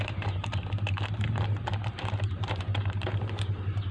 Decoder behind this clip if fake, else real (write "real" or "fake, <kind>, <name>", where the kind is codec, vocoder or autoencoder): fake, vocoder, BigVGAN v2